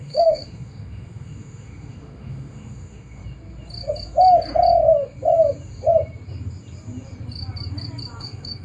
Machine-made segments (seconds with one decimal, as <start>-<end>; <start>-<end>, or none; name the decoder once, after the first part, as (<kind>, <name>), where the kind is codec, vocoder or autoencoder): 0.0-3.2 (autoencoder, DAC-VAE); 8.2-8.6